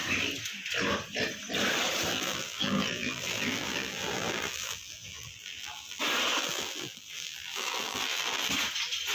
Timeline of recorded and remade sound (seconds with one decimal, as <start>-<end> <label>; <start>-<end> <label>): 0.0-2.1 recorded; 2.1-6.0 remade; 6.0-6.4 recorded; 6.4-8.5 remade; 8.5-9.1 recorded